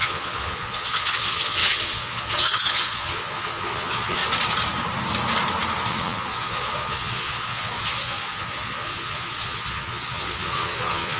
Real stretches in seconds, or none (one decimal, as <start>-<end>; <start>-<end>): 4.2-5.9